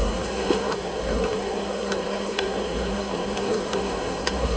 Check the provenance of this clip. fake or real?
fake